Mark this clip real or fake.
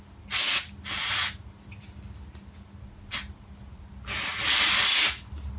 real